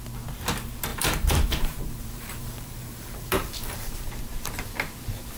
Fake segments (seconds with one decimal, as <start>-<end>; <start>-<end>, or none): 0.9-4.1